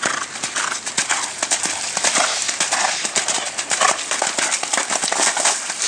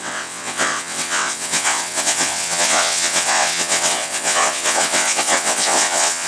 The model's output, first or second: second